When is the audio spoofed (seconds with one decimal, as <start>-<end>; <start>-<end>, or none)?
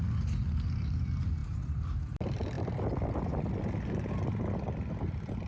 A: none